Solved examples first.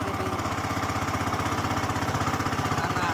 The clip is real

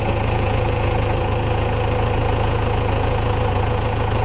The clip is fake